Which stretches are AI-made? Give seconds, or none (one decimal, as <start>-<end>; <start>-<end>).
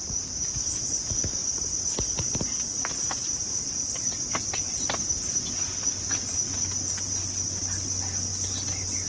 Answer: none